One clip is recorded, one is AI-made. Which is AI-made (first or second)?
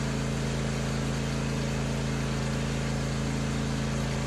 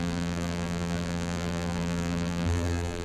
second